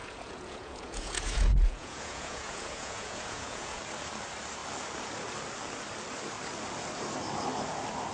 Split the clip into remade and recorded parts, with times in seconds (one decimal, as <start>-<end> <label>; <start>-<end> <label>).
0.0-3.8 remade; 3.8-8.1 recorded